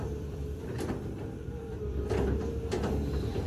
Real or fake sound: fake